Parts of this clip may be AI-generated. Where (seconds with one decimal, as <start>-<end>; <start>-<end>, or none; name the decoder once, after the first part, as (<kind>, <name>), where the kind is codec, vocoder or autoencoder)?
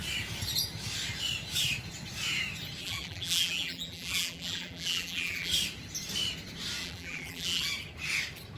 2.8-5.5 (vocoder, BigVGAN v2); 6.8-7.7